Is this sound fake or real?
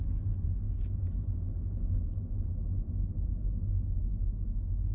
real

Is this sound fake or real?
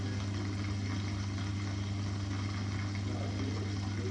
real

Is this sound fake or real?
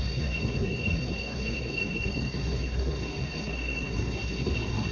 fake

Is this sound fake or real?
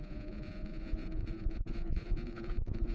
fake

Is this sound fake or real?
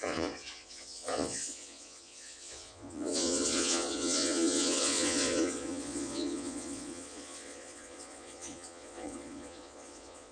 fake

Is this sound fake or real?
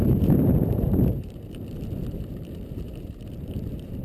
fake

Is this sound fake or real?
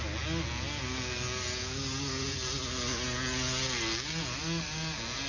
real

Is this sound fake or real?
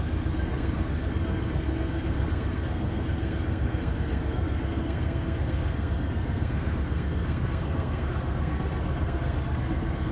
fake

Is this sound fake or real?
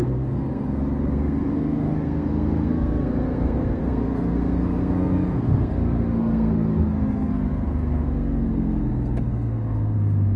fake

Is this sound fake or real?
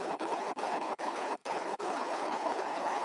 fake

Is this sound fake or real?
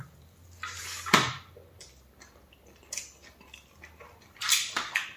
fake